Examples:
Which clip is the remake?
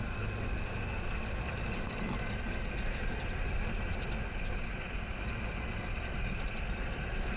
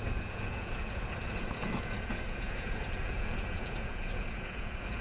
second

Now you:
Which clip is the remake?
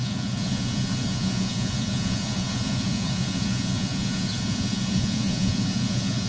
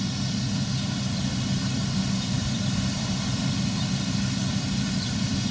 first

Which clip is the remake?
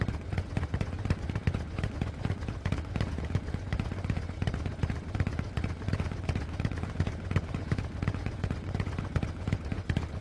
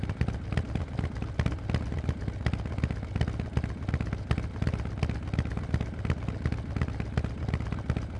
first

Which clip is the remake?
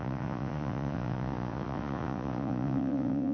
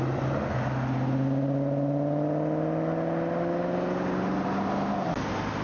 first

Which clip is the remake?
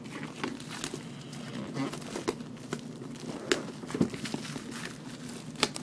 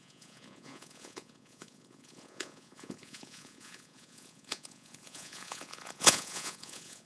second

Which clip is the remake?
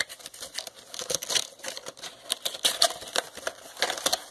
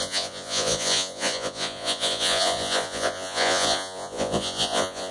second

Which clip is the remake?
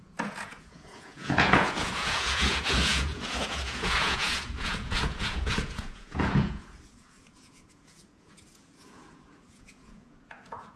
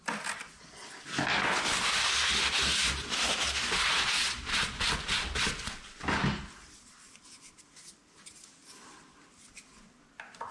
first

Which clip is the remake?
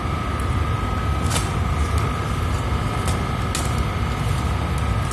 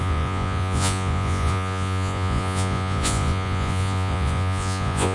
second